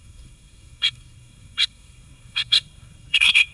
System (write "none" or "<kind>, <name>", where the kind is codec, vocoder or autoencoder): codec, SNAC